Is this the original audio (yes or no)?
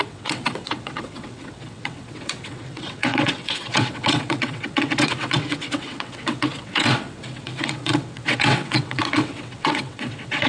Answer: no